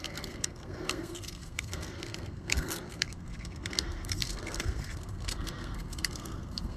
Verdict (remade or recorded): remade